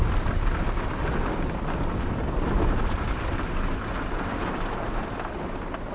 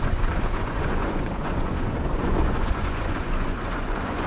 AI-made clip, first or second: second